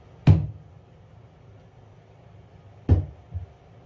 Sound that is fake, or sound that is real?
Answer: real